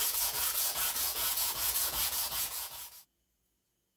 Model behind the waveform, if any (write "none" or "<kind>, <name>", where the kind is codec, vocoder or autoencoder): vocoder, Vocos